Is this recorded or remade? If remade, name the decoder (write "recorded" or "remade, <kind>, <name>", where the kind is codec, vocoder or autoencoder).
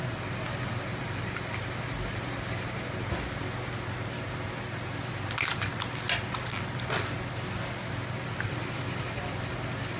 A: recorded